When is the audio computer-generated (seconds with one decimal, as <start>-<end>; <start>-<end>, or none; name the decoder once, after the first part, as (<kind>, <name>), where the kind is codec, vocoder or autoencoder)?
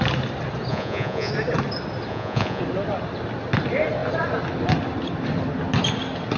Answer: 0.7-1.3 (vocoder, Vocos); 2.1-2.6